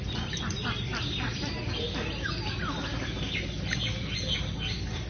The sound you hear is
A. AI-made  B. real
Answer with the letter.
B